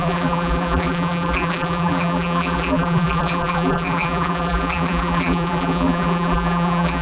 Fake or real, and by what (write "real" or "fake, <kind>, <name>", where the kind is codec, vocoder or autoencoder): fake, vocoder, BigVGAN v2